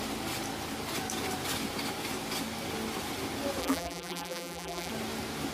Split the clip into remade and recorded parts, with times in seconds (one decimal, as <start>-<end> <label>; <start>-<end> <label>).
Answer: 0.0-3.6 recorded; 3.6-4.9 remade; 4.9-5.5 recorded